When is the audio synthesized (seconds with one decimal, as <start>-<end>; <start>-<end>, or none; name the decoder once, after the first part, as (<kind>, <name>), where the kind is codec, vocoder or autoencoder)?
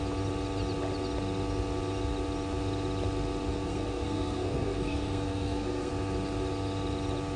3.5-5.9 (codec, SNAC)